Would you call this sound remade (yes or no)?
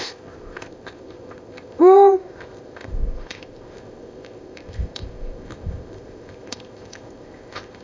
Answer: yes